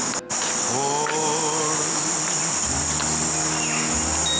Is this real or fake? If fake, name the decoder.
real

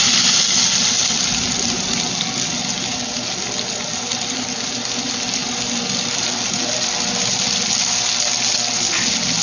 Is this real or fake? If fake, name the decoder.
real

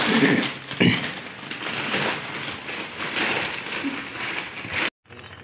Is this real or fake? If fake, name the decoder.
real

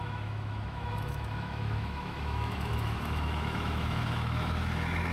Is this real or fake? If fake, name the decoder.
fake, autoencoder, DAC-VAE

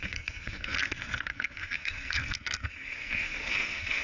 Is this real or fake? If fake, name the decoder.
fake, codec, SNAC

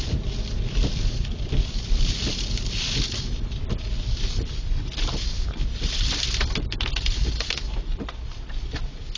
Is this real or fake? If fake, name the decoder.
fake, vocoder, BigVGAN v2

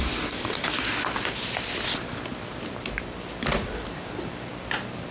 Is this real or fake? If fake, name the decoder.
real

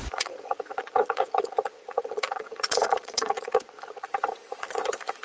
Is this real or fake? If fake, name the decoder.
fake, vocoder, Vocos